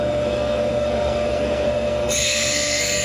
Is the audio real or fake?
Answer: fake